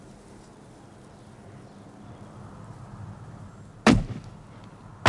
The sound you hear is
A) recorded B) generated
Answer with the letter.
A